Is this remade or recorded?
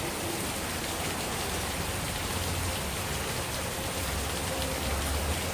recorded